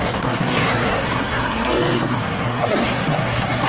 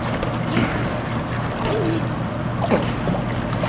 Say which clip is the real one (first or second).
second